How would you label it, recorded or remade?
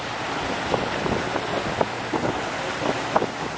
recorded